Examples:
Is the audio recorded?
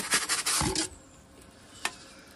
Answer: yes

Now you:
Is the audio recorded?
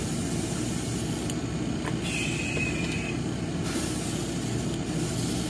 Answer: yes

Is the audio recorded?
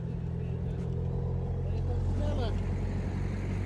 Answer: yes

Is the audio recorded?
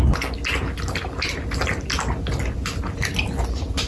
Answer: yes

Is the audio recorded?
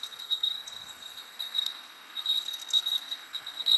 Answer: no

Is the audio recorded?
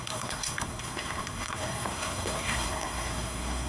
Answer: no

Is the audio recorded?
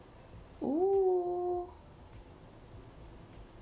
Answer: yes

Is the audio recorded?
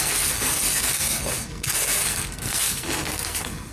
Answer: no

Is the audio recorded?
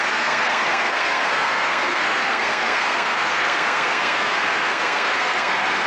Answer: no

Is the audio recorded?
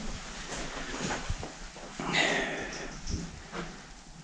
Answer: yes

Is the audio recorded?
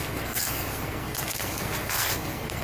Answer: no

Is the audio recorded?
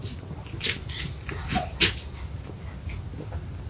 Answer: yes